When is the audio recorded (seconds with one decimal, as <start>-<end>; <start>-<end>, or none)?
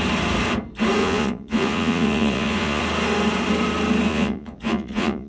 0.0-1.0; 2.8-4.1